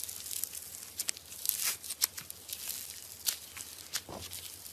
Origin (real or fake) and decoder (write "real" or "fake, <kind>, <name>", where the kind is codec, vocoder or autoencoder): real